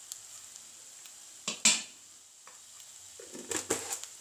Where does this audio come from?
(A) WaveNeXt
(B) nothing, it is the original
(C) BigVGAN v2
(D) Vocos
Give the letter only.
B